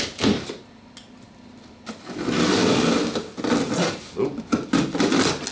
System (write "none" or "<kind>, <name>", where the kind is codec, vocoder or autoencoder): none